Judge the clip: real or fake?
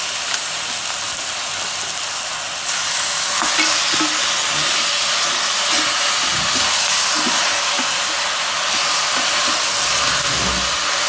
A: real